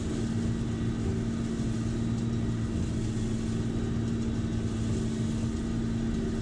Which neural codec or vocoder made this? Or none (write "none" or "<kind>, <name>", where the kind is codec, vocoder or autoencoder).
none